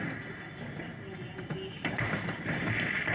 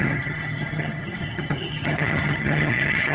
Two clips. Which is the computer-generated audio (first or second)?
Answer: second